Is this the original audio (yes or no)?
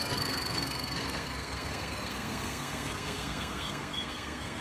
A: no